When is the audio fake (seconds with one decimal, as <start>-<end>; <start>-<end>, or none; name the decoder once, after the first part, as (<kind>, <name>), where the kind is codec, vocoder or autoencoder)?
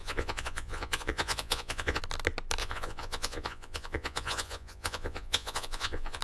0.0-2.0 (vocoder, Vocos); 2.6-6.2